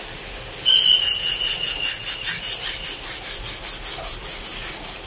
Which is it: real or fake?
real